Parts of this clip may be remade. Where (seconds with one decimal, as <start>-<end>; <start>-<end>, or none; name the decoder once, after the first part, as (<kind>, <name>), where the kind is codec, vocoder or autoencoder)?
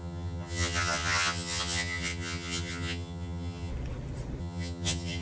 0.0-3.7 (vocoder, HiFi-GAN); 4.4-5.2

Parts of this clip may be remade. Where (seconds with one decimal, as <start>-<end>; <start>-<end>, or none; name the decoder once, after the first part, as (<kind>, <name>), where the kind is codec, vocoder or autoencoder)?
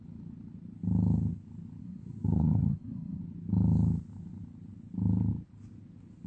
1.8-3.2 (codec, SNAC)